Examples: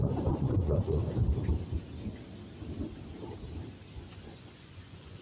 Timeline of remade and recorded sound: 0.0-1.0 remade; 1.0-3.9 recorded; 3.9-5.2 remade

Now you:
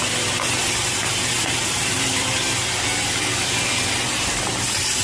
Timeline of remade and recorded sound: 0.0-0.6 recorded; 0.6-3.6 remade; 3.6-5.0 recorded

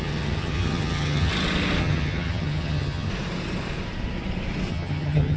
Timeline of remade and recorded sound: 0.0-1.3 remade; 1.3-1.8 recorded; 1.8-3.1 remade; 3.1-4.7 recorded; 4.7-5.4 remade